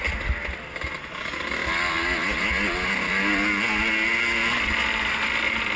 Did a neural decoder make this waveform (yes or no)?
no